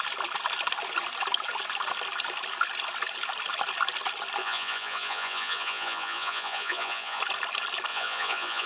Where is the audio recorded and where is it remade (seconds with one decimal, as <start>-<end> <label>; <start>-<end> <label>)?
0.0-4.4 recorded; 4.4-7.2 remade; 7.2-7.9 recorded; 7.9-8.7 remade